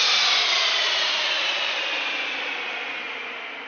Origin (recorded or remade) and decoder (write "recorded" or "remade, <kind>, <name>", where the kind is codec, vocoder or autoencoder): recorded